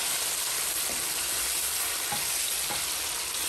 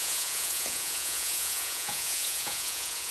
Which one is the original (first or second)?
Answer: first